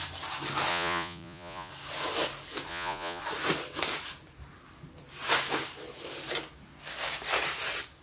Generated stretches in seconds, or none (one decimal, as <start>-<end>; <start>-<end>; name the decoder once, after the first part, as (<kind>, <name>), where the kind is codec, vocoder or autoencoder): 0.7-1.7 (vocoder, Vocos); 2.7-3.2